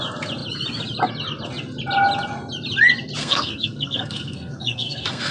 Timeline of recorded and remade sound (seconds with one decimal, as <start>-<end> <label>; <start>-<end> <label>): 0.0-3.2 recorded; 3.2-5.3 remade